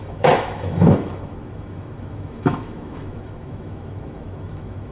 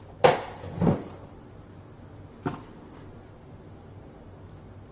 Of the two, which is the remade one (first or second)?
first